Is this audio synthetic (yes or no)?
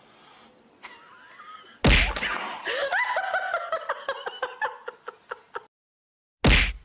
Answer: no